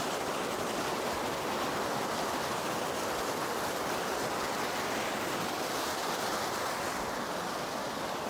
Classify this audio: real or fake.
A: real